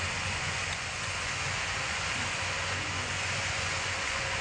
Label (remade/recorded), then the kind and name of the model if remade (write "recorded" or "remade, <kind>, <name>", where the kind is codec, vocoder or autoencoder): remade, vocoder, Vocos